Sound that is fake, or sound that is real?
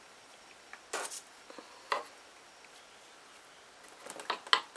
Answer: real